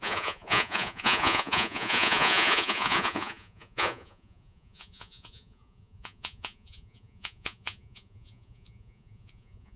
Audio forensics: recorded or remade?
remade